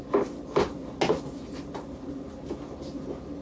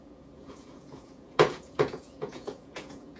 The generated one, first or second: second